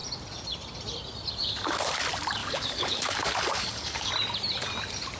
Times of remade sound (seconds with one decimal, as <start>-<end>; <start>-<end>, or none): 1.4-1.9; 2.4-4.1